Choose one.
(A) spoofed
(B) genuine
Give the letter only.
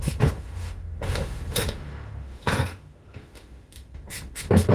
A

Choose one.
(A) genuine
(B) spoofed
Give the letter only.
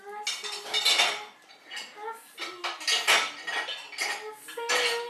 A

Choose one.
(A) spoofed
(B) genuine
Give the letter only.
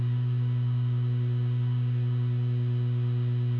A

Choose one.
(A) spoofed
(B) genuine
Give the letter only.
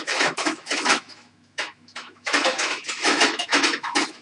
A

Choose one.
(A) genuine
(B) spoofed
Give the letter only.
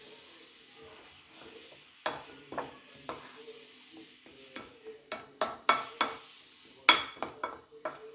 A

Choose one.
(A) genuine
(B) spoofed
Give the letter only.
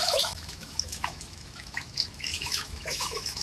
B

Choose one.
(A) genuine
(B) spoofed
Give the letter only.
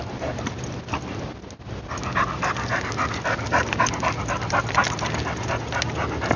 A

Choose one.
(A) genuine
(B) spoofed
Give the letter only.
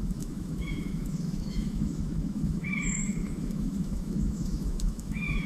B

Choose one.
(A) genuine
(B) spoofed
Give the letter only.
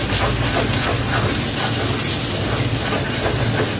A